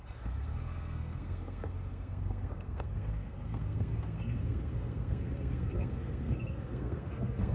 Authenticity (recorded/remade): remade